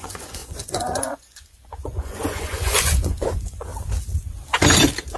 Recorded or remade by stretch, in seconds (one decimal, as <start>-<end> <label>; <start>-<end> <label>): 0.0-3.7 remade; 3.7-5.2 recorded